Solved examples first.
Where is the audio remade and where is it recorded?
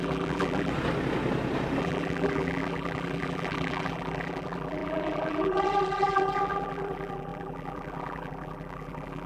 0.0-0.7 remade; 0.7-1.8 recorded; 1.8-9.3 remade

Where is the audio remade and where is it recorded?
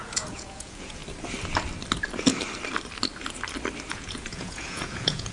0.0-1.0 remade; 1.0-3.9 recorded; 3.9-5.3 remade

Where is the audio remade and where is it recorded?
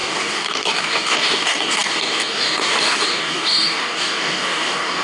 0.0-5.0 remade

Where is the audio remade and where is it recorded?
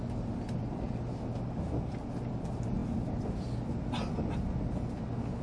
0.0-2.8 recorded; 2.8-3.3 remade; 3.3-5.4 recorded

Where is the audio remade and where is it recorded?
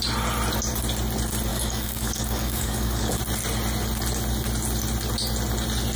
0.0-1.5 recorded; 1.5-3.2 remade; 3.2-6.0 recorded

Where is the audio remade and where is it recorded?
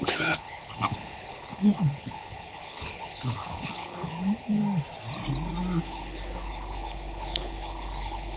0.0-4.6 remade; 4.6-5.8 recorded; 5.8-8.4 remade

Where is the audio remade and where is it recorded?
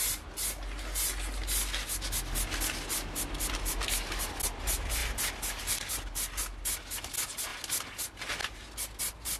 0.0-9.4 recorded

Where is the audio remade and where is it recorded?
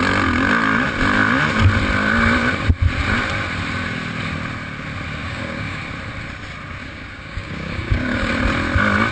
0.0-5.2 recorded; 5.2-5.8 remade; 5.8-6.8 recorded; 6.8-8.3 remade; 8.3-9.1 recorded